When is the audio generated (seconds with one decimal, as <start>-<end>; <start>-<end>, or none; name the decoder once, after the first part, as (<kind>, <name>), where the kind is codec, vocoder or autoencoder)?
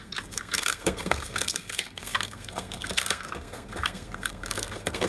0.0-5.1 (codec, SNAC)